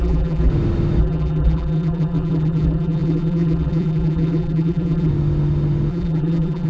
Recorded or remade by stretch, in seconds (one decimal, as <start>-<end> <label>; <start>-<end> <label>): 0.0-0.5 remade; 0.5-1.0 recorded; 1.0-5.1 remade; 5.1-5.9 recorded; 5.9-6.7 remade

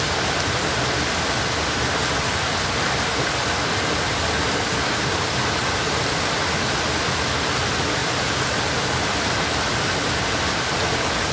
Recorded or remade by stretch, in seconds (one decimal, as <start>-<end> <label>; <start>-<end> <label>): 0.0-8.0 recorded; 8.0-8.8 remade; 8.8-11.3 recorded

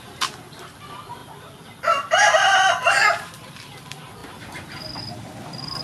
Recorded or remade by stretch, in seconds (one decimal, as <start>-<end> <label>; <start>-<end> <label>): 0.0-1.2 remade; 1.2-2.8 recorded; 2.8-5.8 remade

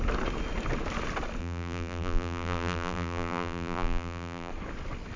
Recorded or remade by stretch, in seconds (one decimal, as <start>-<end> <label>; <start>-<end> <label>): 0.0-1.4 recorded; 1.4-4.5 remade; 4.5-5.2 recorded